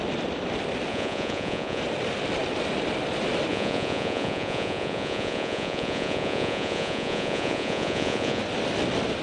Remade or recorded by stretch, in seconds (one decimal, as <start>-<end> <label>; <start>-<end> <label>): 0.0-0.9 recorded; 0.9-1.8 remade; 1.8-3.5 recorded; 3.5-8.4 remade; 8.4-9.2 recorded